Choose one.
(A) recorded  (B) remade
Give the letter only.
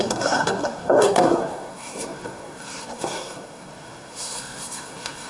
B